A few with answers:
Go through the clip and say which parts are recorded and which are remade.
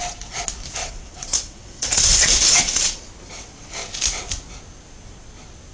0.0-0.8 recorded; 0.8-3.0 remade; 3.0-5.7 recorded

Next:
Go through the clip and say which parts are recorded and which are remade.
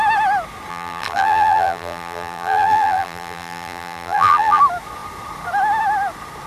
0.0-0.7 recorded; 0.7-4.6 remade; 4.6-6.5 recorded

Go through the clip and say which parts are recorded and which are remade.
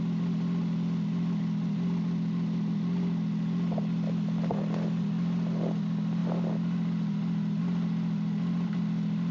0.0-9.3 recorded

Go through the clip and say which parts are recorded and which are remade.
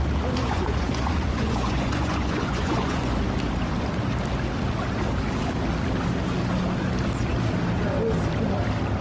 0.0-0.4 recorded; 0.4-3.1 remade; 3.1-9.0 recorded